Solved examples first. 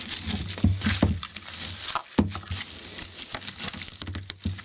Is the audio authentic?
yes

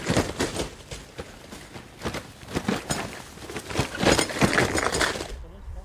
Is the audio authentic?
yes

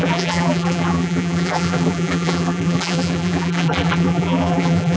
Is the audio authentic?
no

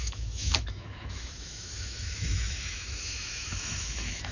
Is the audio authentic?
no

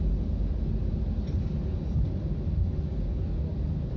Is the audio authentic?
yes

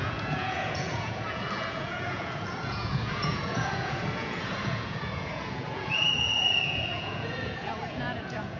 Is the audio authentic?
no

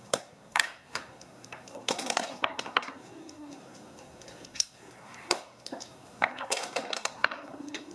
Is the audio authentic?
no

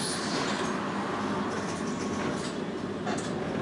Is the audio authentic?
yes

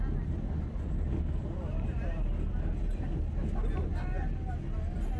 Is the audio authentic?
yes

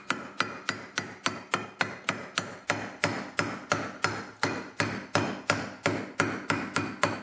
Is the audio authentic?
yes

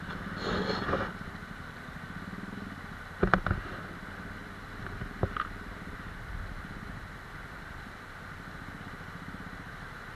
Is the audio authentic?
yes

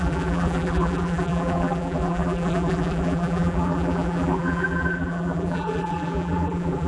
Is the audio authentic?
no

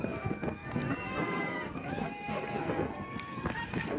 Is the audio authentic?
no